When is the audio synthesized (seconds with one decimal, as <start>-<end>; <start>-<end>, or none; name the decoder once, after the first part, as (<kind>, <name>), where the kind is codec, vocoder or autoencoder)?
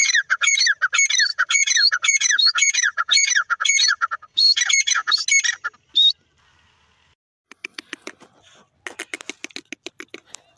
0.0-0.6 (vocoder, Vocos); 1.3-5.2